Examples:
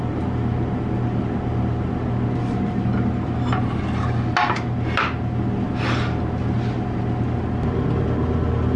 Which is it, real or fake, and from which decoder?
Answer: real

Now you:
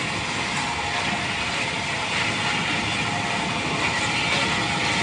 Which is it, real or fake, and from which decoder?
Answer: real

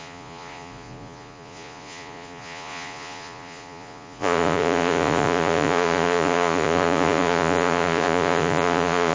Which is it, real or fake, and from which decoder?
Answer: fake, vocoder, Vocos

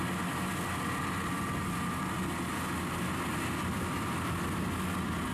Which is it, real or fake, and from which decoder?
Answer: real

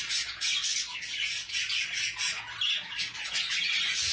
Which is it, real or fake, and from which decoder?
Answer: real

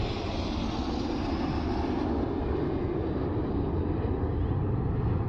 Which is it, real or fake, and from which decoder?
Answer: real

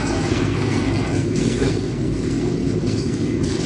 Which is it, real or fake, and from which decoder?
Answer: fake, codec, SNAC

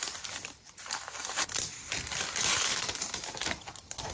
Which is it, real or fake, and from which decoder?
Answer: fake, vocoder, BigVGAN v2